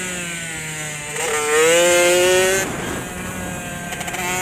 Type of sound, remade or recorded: recorded